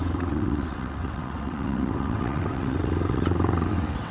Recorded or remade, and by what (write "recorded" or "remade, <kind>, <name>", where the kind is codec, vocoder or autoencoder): remade, vocoder, WaveNeXt